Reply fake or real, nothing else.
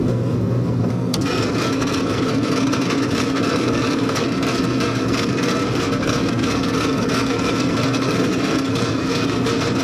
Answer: fake